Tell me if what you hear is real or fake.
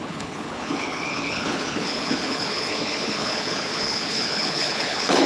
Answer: fake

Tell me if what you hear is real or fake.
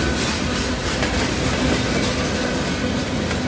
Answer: real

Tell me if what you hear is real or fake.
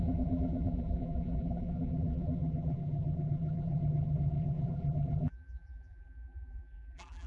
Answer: fake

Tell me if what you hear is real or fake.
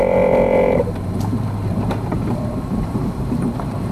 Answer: fake